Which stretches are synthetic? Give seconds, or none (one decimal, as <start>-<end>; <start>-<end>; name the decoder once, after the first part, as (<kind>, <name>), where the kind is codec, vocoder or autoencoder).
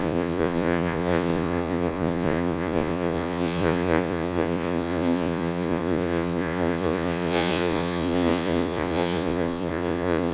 0.0-10.3 (vocoder, Vocos)